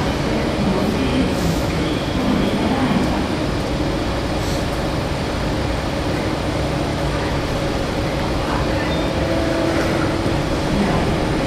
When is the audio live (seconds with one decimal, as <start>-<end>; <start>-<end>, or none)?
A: 0.0-1.1; 2.0-6.9; 7.4-11.5